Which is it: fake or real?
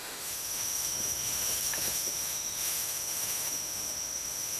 fake